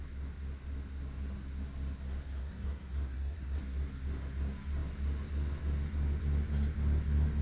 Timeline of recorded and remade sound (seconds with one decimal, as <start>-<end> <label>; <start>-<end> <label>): 0.0-2.4 recorded; 2.4-3.6 remade; 3.6-7.4 recorded